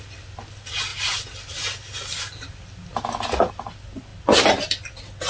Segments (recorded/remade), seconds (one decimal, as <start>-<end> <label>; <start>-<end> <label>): 0.0-5.3 recorded